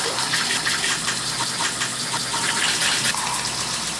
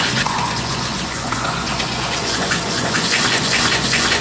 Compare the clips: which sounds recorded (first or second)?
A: first